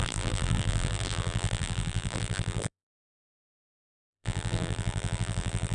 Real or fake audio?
fake